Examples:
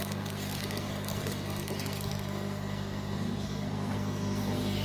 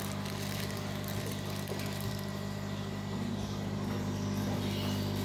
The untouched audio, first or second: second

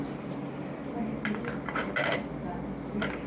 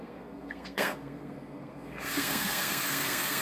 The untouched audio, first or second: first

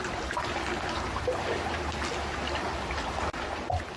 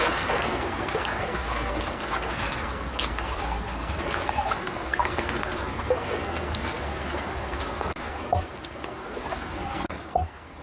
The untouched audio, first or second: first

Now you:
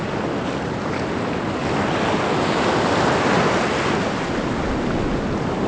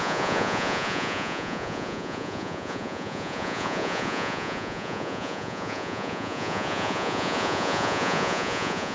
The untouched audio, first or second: first